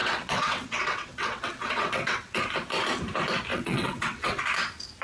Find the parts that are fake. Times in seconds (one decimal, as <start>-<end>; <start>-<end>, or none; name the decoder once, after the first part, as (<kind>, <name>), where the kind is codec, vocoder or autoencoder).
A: 0.0-2.4 (vocoder, WaveNeXt); 3.5-4.4